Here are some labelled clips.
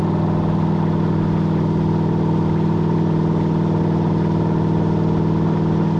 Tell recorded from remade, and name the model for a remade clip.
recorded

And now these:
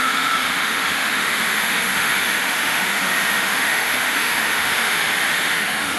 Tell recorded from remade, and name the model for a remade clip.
remade, autoencoder, DAC-VAE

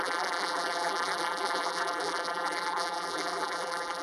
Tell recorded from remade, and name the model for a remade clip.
remade, vocoder, BigVGAN v2